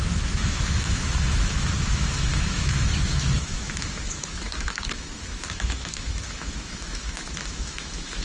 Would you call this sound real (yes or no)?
no